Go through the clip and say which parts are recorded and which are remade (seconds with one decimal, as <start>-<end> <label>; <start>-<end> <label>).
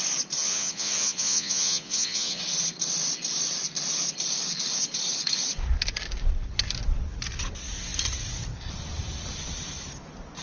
0.0-0.4 recorded; 0.4-2.4 remade; 2.4-10.4 recorded